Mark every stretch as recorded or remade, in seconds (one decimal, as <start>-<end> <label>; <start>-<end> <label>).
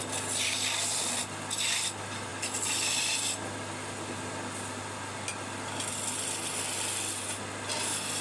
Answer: 0.0-8.2 recorded